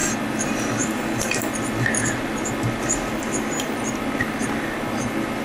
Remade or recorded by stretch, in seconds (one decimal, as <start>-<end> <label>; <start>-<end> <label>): 0.0-5.4 recorded